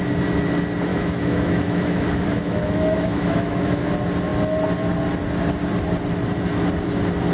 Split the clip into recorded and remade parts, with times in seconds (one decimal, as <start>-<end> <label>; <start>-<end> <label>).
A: 0.0-0.9 recorded; 0.9-3.9 remade; 3.9-7.3 recorded